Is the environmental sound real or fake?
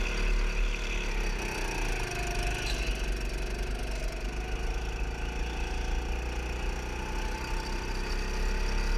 real